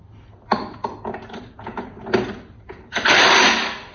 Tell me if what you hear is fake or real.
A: real